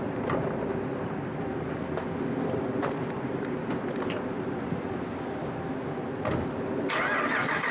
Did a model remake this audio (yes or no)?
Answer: no